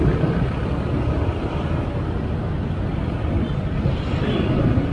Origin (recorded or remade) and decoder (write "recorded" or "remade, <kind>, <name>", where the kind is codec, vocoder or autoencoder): recorded